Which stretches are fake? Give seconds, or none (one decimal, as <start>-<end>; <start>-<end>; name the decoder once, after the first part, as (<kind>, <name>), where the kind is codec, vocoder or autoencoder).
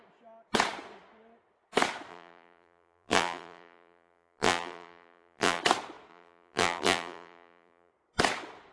2.1-5.6 (vocoder, BigVGAN v2); 6.1-7.9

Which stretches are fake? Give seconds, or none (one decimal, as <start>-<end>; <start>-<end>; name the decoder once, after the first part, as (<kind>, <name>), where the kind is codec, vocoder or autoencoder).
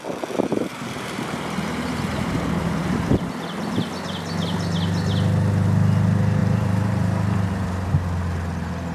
0.5-3.3 (vocoder, BigVGAN v2); 6.4-7.9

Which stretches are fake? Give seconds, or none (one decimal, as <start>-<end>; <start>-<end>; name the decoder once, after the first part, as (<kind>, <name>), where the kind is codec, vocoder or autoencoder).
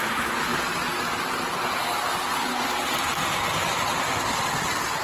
2.3-3.9 (vocoder, BigVGAN v2)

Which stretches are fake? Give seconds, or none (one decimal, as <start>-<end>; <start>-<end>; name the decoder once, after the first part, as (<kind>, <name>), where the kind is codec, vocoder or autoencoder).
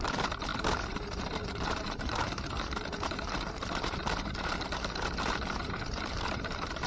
0.0-6.9 (vocoder, BigVGAN v2)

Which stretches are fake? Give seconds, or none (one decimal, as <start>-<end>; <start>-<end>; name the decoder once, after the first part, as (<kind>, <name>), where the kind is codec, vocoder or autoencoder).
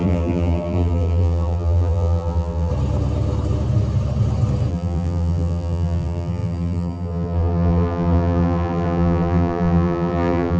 0.0-2.7 (vocoder, BigVGAN v2); 4.7-10.6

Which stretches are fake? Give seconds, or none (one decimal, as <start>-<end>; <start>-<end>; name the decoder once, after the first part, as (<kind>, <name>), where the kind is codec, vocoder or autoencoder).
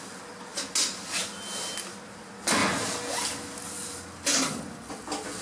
none